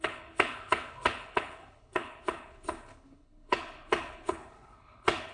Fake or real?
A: fake